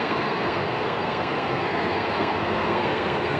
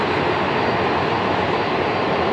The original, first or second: second